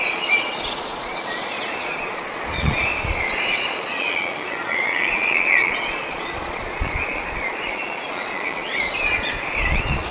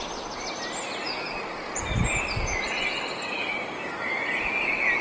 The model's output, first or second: first